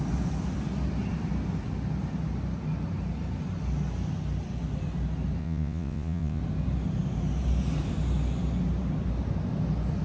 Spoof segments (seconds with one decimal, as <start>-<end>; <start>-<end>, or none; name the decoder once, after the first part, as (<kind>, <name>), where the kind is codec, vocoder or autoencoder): 5.4-6.4 (vocoder, Vocos)